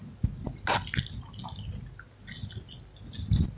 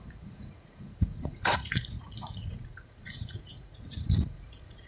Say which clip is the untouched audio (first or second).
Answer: first